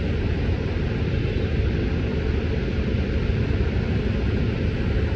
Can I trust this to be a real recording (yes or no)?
yes